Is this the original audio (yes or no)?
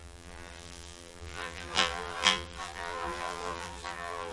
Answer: no